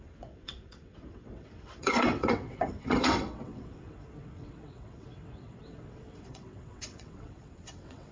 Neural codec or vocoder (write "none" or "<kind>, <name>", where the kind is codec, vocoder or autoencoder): vocoder, WaveNeXt